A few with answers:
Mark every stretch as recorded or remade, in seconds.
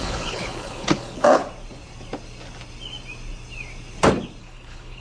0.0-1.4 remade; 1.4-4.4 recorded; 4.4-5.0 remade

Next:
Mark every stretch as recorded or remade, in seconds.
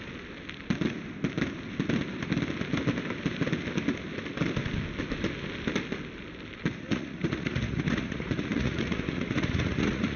0.0-6.9 recorded; 6.9-10.2 remade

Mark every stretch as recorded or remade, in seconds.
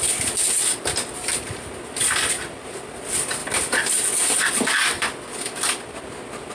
0.0-6.5 recorded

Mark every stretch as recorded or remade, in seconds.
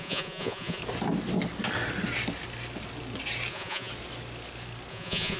0.0-0.8 remade; 0.8-3.5 recorded; 3.5-3.9 remade; 3.9-4.9 recorded; 4.9-5.4 remade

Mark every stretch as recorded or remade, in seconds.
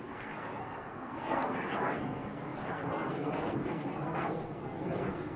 0.0-5.4 remade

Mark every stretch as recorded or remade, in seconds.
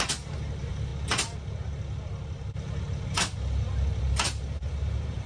0.0-0.9 remade; 0.9-4.1 recorded; 4.1-5.3 remade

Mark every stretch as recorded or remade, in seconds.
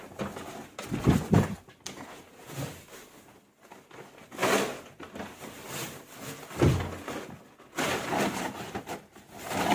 0.0-9.7 recorded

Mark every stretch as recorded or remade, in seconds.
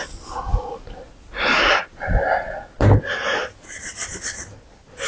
0.0-5.1 recorded